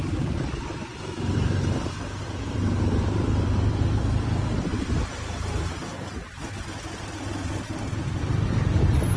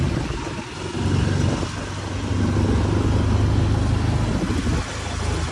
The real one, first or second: second